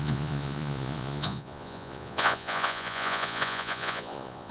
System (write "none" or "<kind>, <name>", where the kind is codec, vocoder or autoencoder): vocoder, Vocos